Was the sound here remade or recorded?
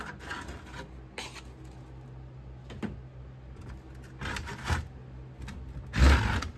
recorded